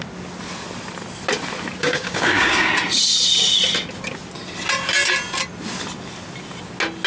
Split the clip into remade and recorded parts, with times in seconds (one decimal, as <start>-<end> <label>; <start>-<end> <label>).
0.0-1.8 recorded; 1.8-2.7 remade; 2.7-7.1 recorded